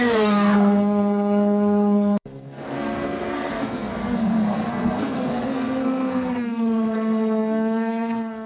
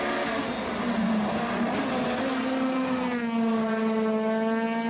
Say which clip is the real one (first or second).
second